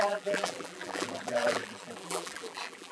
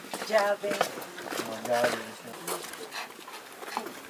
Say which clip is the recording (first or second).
second